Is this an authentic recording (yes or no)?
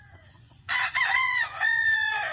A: no